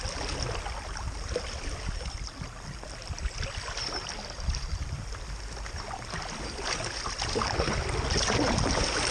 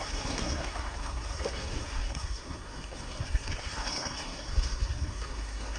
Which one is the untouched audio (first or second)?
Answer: first